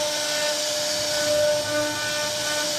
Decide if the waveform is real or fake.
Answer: real